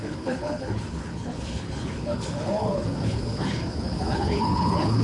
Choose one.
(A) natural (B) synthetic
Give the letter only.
B